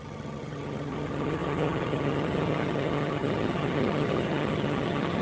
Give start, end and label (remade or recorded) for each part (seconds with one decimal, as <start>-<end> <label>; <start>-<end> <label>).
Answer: 0.0-5.2 remade